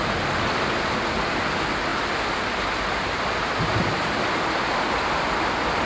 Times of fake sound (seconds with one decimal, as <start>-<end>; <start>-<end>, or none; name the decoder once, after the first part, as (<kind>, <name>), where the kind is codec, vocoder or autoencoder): none